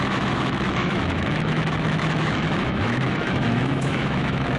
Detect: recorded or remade remade